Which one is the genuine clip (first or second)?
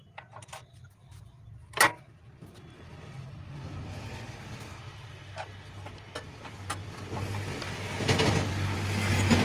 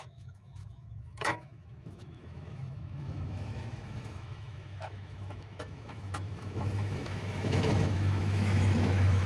first